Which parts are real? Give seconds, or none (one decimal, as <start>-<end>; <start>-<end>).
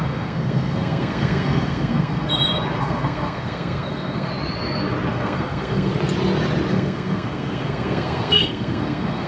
2.3-2.8; 4.3-5.1; 5.9-6.7